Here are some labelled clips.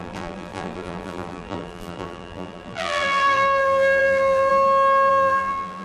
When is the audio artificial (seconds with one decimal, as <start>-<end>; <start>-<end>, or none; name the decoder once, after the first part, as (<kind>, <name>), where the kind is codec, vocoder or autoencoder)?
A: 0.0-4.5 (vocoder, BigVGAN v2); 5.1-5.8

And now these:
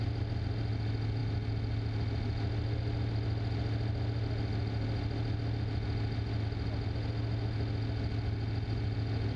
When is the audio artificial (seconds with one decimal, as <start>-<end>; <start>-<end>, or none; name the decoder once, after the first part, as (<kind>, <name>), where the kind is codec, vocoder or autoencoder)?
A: none

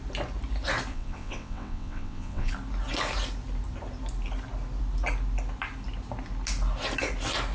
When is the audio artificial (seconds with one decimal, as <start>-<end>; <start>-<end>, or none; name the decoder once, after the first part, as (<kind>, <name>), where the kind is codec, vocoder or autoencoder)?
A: 0.9-2.5 (vocoder, WaveNeXt)

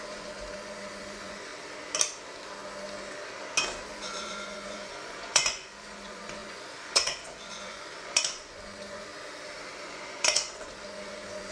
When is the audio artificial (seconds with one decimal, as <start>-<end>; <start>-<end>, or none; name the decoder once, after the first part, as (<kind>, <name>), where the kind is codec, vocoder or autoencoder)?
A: 0.0-1.5 (vocoder, Vocos); 3.9-9.1; 9.8-11.5